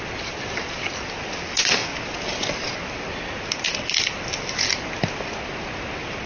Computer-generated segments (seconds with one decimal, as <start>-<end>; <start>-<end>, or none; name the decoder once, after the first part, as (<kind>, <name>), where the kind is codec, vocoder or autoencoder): none